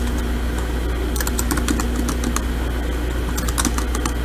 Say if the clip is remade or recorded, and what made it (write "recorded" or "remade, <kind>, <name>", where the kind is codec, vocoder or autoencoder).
recorded